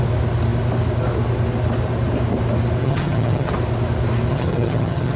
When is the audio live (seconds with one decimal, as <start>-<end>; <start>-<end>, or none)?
0.0-2.8; 3.5-4.3